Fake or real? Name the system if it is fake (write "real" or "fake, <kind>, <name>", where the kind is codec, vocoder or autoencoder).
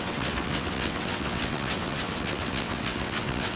fake, vocoder, WaveNeXt